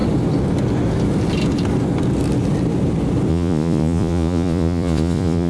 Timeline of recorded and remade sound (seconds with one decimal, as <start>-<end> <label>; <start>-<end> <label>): 0.0-3.3 recorded; 3.3-5.5 remade